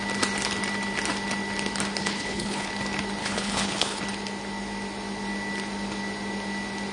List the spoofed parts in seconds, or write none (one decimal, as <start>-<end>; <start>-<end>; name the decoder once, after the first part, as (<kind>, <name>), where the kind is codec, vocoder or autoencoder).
2.0-2.7 (codec, HILCodec); 3.2-4.0